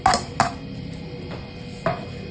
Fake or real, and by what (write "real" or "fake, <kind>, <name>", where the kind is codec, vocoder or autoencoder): real